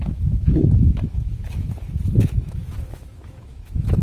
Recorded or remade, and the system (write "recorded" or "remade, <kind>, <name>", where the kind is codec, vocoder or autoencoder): remade, autoencoder, DAC-VAE